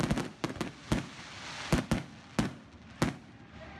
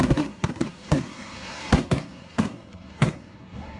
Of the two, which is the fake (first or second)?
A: second